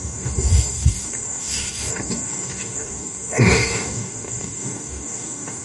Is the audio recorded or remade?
remade